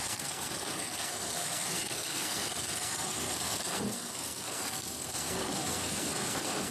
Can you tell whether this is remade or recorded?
remade